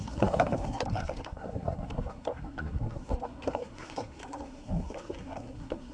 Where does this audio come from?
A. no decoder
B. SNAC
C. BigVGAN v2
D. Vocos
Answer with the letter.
B